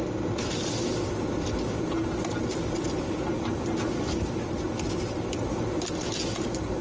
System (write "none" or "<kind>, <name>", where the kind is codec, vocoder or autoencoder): none